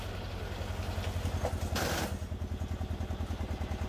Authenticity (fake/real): real